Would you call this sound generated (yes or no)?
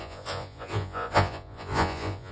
yes